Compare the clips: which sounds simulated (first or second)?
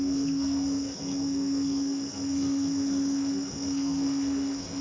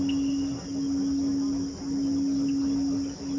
first